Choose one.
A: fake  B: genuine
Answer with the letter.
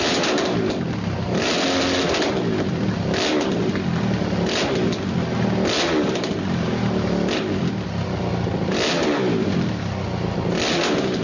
B